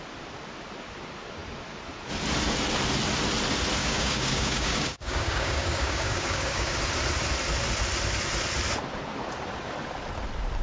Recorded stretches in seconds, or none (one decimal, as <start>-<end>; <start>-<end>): 0.0-3.8; 6.8-10.6